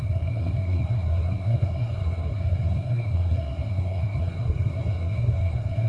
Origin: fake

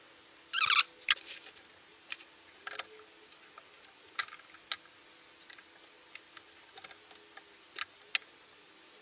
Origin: real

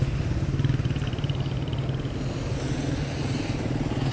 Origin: real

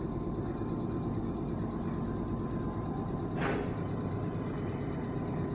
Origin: real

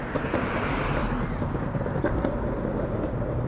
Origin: real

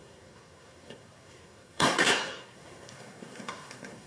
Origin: fake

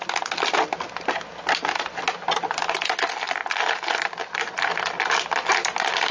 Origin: real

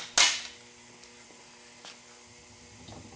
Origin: real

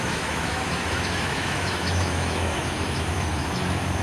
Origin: fake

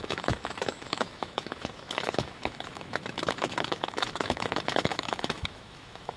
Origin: fake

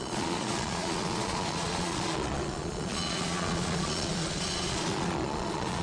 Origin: fake